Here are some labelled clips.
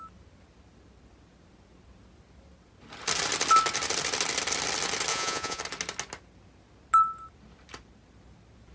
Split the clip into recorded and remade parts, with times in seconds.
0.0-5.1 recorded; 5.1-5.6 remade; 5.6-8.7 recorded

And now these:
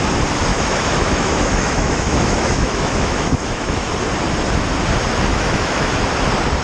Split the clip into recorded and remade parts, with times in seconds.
0.0-0.5 recorded; 0.5-3.9 remade; 3.9-5.3 recorded; 5.3-5.9 remade; 5.9-6.6 recorded

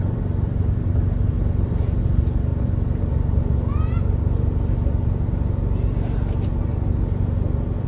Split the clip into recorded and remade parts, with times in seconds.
0.0-7.9 recorded